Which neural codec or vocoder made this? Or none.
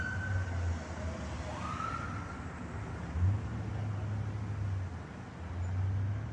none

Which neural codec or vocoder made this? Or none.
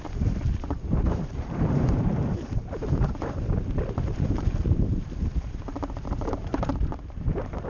vocoder, BigVGAN v2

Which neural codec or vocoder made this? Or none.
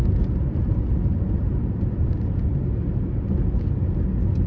none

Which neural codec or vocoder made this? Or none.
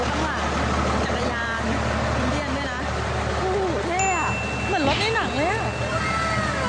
none